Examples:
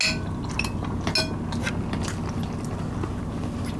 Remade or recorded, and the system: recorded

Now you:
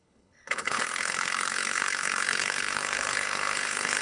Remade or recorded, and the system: remade, codec, HILCodec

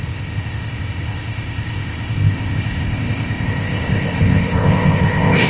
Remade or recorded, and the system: remade, codec, ZipCodec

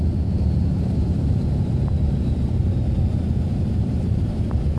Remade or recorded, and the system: remade, vocoder, BigVGAN v2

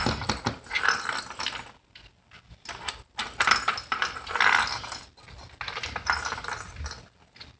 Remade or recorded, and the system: recorded